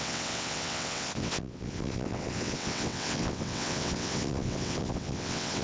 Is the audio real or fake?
fake